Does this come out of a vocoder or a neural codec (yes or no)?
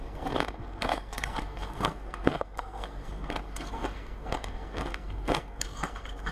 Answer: yes